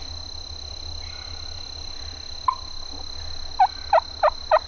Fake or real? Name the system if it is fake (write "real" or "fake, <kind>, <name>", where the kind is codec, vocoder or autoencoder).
real